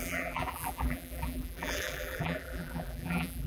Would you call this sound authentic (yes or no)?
no